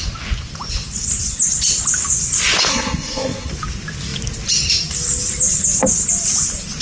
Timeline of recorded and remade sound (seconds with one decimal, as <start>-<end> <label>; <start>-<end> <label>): 0.0-2.7 recorded; 2.7-3.5 remade; 3.5-6.8 recorded